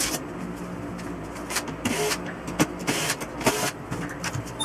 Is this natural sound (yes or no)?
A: yes